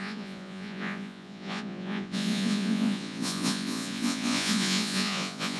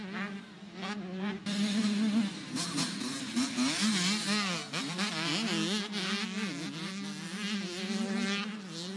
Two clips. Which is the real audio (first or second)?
second